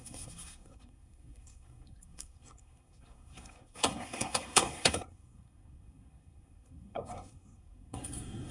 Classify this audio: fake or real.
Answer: fake